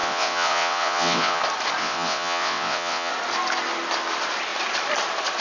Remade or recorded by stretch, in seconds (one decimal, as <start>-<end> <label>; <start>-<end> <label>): 0.0-1.4 remade; 1.4-1.8 recorded; 1.8-3.1 remade; 3.1-5.4 recorded